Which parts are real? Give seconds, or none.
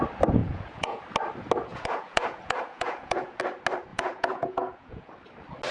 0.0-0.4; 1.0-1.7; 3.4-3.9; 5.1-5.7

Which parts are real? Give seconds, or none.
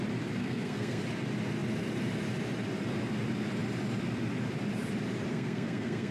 0.0-0.4; 1.0-5.3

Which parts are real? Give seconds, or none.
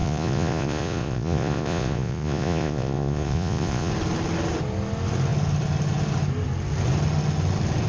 3.9-7.9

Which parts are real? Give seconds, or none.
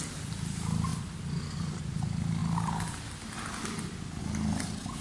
none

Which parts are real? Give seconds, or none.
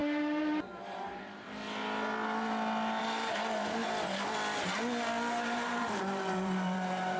0.0-3.0; 3.8-5.3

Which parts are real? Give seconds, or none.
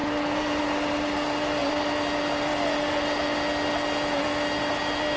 0.0-5.2